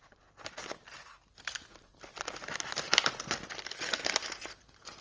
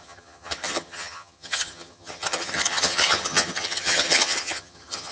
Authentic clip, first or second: first